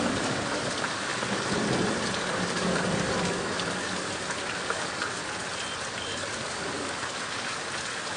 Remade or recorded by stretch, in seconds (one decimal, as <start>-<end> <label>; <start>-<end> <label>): 0.0-1.1 remade; 1.1-2.2 recorded; 2.2-5.2 remade; 5.2-6.0 recorded; 6.0-8.2 remade